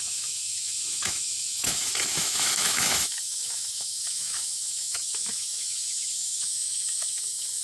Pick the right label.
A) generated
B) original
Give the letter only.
A